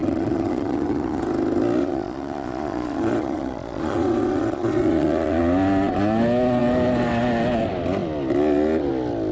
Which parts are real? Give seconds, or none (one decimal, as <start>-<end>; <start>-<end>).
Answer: 1.2-1.8; 5.4-9.3

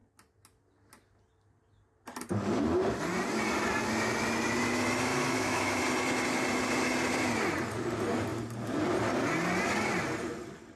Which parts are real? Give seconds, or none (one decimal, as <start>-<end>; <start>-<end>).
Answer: 0.0-5.1; 5.8-10.8

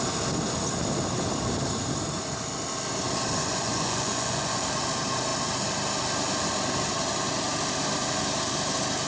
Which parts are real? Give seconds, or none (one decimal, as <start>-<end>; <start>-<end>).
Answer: 0.0-3.4; 4.6-9.1

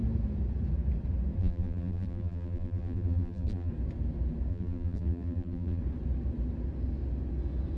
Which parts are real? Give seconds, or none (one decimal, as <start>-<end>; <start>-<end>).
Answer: 0.0-1.4; 3.7-4.5; 5.8-7.8